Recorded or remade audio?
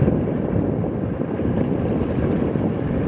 recorded